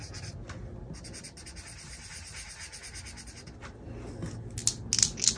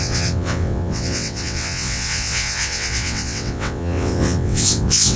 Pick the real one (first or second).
first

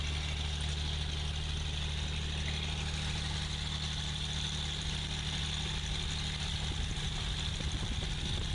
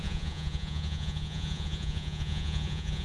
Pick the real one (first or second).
first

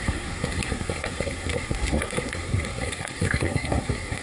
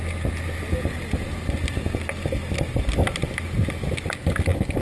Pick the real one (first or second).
second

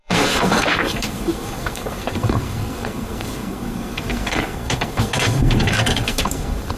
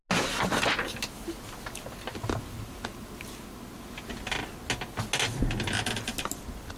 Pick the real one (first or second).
second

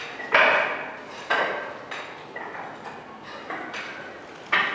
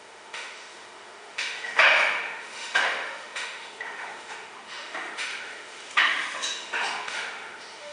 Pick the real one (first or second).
first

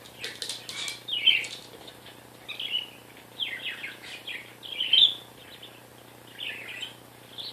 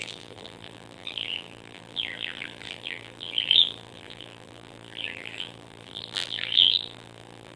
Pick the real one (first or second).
first